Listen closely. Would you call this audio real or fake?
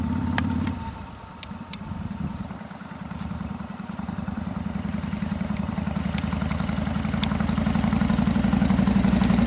fake